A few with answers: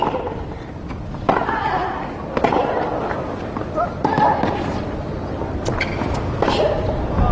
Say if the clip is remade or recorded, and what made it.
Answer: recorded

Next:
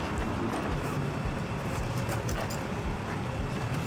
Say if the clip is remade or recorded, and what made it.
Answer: recorded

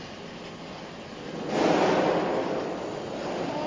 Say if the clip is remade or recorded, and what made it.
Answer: recorded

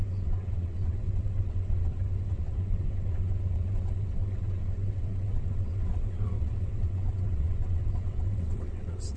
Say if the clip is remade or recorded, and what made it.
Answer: remade, vocoder, WaveNeXt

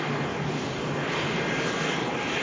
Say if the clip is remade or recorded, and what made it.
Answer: recorded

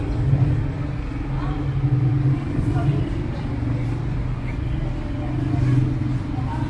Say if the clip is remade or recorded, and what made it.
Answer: recorded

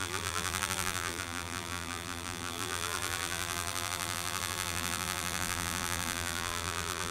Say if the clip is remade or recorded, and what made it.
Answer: remade, vocoder, BigVGAN v2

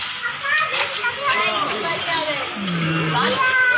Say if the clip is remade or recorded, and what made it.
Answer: recorded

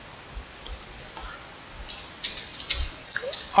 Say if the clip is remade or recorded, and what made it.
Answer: recorded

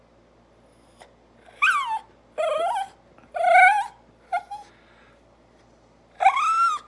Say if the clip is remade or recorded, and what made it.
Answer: recorded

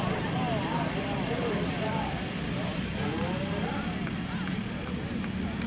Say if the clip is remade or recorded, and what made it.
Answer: recorded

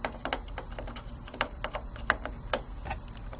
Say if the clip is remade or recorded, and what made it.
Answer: recorded